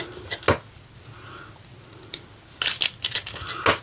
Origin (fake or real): real